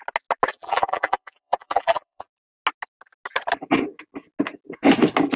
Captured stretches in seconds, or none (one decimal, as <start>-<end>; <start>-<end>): 0.0-0.5; 2.3-5.4